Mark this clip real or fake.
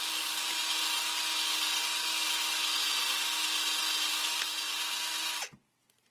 real